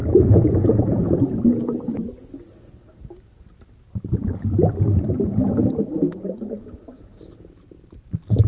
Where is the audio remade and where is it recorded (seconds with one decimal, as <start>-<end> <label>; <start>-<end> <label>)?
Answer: 0.0-1.9 remade; 1.9-5.4 recorded; 5.4-8.5 remade